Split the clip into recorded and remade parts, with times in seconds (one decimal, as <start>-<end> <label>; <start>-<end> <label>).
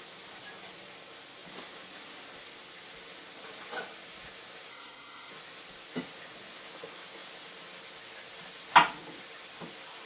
0.0-4.7 recorded; 4.7-5.3 remade; 5.3-10.1 recorded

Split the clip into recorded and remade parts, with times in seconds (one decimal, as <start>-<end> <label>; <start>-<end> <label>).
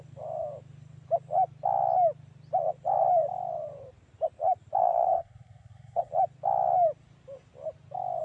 0.0-4.8 recorded; 4.8-6.1 remade; 6.1-8.2 recorded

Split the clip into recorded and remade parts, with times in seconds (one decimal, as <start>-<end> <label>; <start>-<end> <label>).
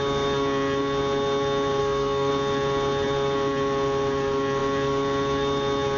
0.0-1.8 recorded; 1.8-2.3 remade; 2.3-6.0 recorded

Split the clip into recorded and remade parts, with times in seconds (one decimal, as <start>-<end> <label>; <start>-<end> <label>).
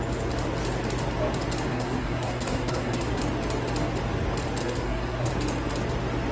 0.0-1.7 recorded; 1.7-3.2 remade; 3.2-4.6 recorded; 4.6-5.3 remade; 5.3-6.3 recorded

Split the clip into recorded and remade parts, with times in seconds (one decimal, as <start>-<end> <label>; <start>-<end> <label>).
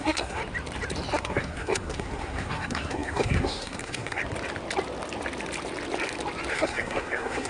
0.0-0.4 remade; 0.4-1.2 recorded; 1.2-4.2 remade; 4.2-6.5 recorded; 6.5-7.5 remade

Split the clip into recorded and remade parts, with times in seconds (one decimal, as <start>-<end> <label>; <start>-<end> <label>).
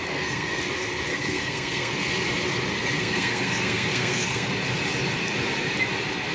0.0-0.6 remade; 0.6-1.1 recorded; 1.1-1.9 remade; 1.9-3.0 recorded; 3.0-4.5 remade; 4.5-6.3 recorded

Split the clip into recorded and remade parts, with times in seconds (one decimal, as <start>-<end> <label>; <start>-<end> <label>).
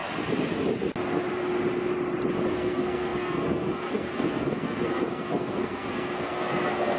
0.0-2.5 recorded; 2.5-7.0 remade